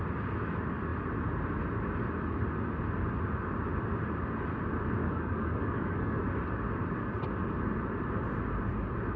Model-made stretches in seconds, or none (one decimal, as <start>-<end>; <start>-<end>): 5.0-6.2